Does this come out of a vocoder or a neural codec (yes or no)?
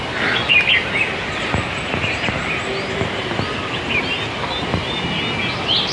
no